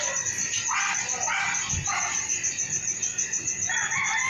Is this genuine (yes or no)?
yes